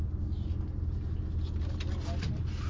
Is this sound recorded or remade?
recorded